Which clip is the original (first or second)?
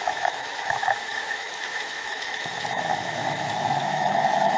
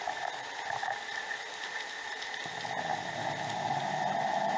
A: second